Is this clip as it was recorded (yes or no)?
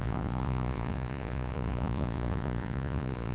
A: no